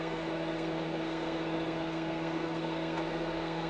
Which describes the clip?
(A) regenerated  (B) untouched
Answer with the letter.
A